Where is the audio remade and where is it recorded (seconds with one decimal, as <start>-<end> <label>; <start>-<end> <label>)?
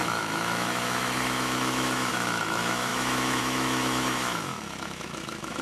0.0-5.6 remade